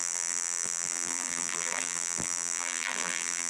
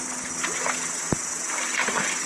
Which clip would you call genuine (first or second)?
second